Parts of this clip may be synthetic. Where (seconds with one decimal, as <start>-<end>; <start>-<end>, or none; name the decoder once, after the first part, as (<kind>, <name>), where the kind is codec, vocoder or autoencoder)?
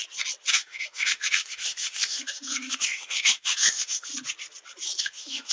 0.5-4.1 (autoencoder, DAC-VAE); 5.0-5.5